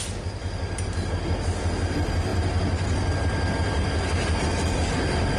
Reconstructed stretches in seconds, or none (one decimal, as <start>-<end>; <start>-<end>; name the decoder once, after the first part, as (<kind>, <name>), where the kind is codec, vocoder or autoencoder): none